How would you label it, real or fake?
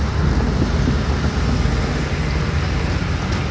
real